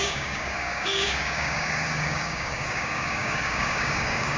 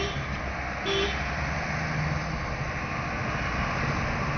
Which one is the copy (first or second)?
first